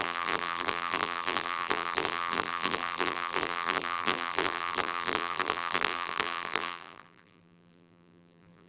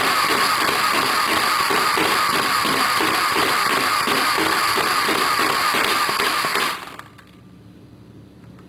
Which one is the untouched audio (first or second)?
second